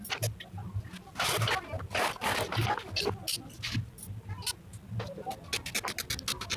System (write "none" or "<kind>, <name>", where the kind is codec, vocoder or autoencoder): none